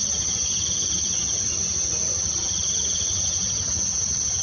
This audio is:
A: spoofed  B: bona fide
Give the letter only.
B